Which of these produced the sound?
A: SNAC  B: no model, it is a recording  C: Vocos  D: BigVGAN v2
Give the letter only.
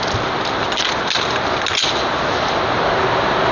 B